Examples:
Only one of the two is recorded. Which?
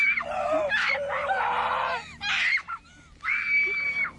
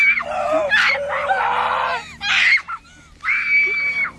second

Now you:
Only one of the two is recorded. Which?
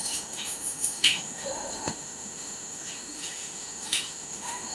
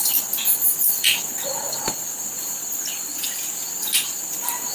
second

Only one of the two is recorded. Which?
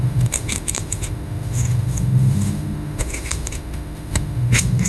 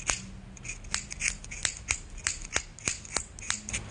second